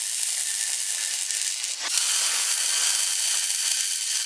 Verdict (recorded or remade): recorded